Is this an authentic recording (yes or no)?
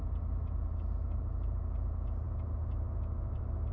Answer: yes